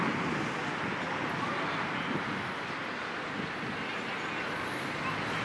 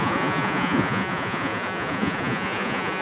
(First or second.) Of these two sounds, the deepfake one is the second